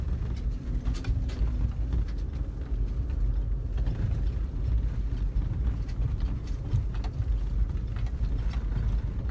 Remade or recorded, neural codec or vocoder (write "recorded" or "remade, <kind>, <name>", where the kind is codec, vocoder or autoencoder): recorded